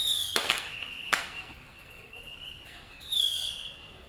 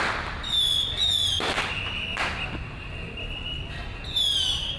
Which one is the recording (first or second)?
second